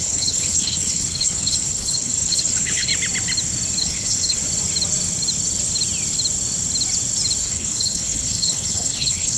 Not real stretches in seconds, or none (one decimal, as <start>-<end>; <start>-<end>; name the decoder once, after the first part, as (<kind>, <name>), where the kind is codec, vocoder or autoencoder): 0.0-2.9 (codec, HILCodec); 3.8-4.4; 7.4-9.4